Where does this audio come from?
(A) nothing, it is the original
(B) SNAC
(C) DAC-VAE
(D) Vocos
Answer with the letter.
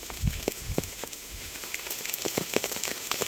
C